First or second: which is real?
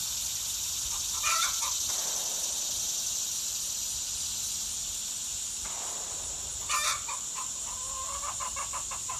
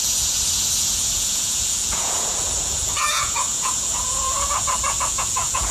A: first